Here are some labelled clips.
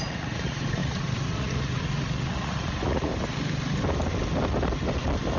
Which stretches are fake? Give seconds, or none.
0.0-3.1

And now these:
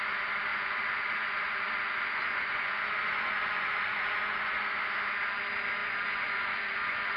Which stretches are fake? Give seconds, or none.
0.5-4.8; 5.8-7.2

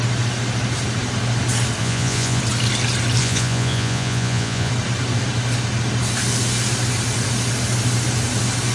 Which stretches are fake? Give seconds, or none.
1.8-2.4; 3.2-4.7

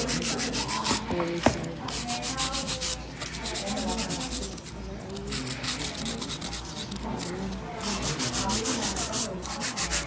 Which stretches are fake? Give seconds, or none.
8.8-9.5

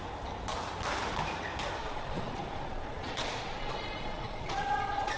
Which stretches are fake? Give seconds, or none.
1.8-5.2

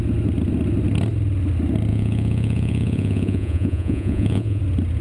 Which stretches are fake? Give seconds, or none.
1.9-4.6

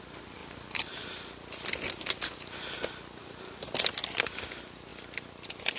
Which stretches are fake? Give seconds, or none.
none

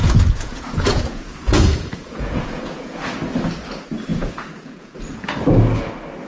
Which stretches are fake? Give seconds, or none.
0.0-3.2; 4.1-5.0